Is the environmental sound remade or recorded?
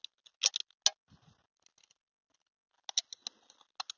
recorded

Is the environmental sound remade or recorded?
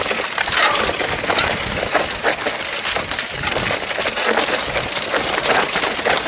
recorded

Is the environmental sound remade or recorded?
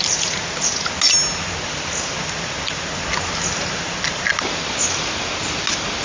recorded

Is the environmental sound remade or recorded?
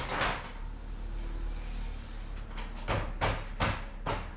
recorded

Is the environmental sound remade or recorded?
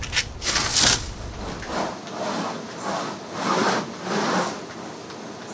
recorded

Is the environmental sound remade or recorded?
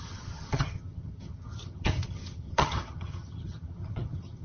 remade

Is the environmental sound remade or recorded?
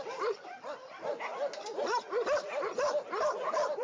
recorded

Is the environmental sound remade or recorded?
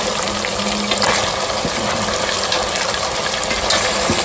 recorded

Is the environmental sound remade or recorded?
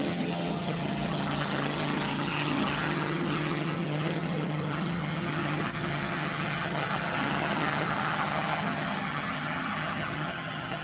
remade